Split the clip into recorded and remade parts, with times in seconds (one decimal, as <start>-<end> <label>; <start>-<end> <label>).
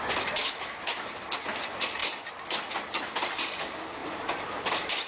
0.0-0.4 recorded; 0.4-1.1 remade; 1.1-5.1 recorded